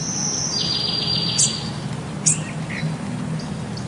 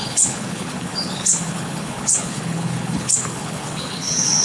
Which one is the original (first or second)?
first